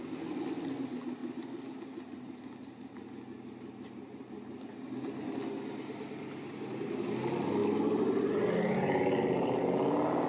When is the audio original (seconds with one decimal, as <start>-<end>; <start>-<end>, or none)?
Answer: 0.0-10.3